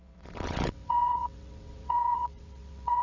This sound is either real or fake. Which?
fake